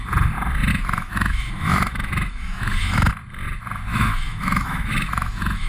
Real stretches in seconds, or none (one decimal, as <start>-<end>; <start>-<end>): 0.0-0.7; 3.1-3.9